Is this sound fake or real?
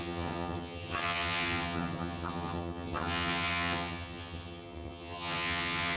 fake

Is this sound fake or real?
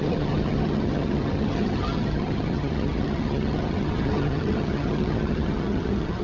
fake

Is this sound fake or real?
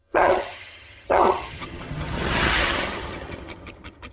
fake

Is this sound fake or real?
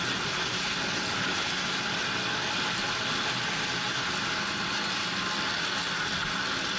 real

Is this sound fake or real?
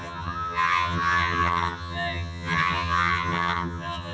fake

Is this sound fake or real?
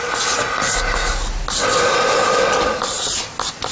real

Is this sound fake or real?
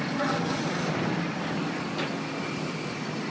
real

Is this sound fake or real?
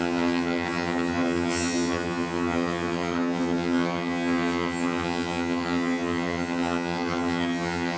fake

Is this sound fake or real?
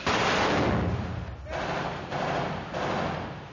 real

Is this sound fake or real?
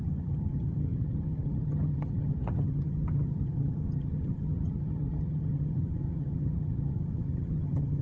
fake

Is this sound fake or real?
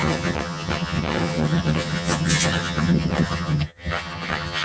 fake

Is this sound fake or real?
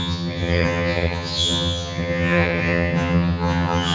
fake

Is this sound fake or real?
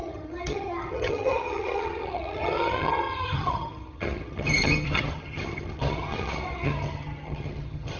fake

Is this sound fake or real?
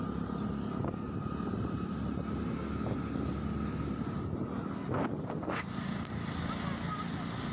real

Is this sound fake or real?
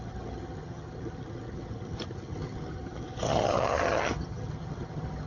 fake